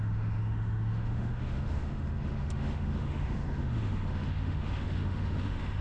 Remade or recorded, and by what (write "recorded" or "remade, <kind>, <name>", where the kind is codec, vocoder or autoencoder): remade, autoencoder, DAC-VAE